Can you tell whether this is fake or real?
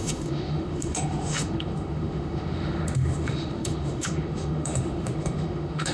fake